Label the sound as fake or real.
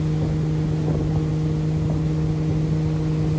real